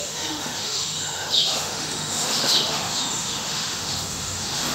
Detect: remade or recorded remade